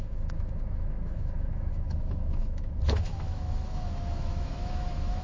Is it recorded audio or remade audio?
remade